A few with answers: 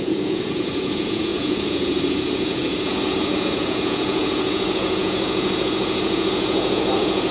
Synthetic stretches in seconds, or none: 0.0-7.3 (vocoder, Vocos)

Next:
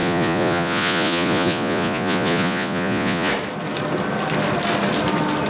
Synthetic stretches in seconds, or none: 0.0-3.3 (vocoder, Vocos)

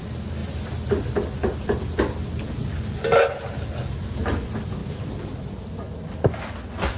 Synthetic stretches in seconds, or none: none